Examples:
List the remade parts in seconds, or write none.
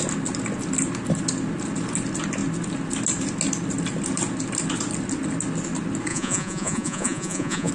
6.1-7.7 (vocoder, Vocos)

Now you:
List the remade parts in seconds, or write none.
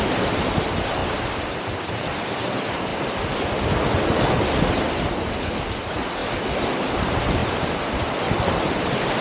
0.0-2.9 (vocoder, BigVGAN v2); 5.8-6.2; 6.9-9.2